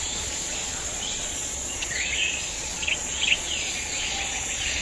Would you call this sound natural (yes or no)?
no